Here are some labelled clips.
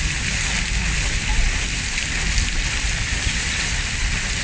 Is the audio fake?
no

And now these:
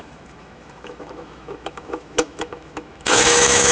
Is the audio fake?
yes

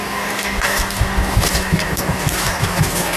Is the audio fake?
yes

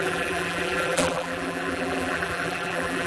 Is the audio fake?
yes